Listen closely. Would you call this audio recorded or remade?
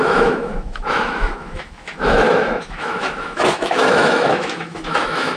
remade